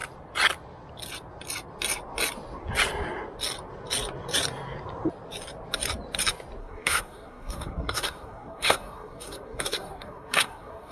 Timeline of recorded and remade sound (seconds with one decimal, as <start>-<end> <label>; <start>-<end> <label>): 0.0-6.6 recorded; 6.6-10.9 remade

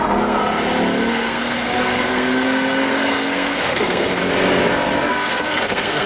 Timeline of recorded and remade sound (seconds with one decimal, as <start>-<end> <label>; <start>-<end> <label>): 0.0-0.4 remade; 0.4-1.1 recorded; 1.1-4.2 remade; 4.2-5.1 recorded; 5.1-6.1 remade

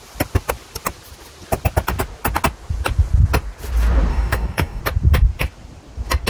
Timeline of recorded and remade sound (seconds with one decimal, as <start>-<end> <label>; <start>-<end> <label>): 0.0-4.1 recorded; 4.1-4.8 remade; 4.8-6.3 recorded

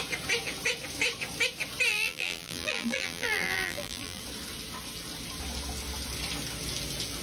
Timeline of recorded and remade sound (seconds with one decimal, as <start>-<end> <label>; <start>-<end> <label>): 0.0-1.9 recorded; 1.9-4.2 remade; 4.2-7.2 recorded

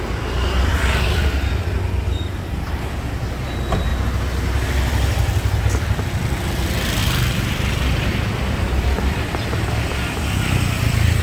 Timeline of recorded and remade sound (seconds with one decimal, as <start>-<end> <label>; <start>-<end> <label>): 0.0-0.7 recorded; 0.7-2.5 remade; 2.5-7.0 recorded; 7.0-11.2 remade

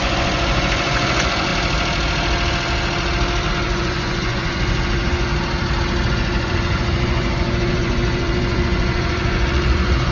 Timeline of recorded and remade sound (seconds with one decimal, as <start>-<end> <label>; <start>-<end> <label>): 0.0-1.5 remade; 1.5-3.5 recorded; 3.5-5.3 remade; 5.3-6.1 recorded; 6.1-10.1 remade